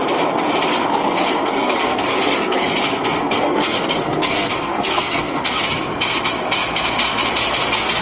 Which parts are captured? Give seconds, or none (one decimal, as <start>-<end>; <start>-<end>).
0.0-0.9; 2.8-3.2; 5.6-8.0